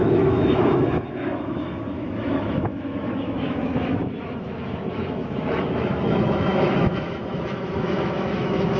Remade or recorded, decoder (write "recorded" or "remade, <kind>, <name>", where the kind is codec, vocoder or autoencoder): remade, autoencoder, DAC-VAE